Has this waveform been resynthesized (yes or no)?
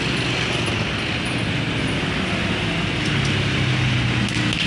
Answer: no